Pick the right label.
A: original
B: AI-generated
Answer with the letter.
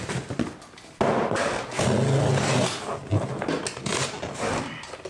A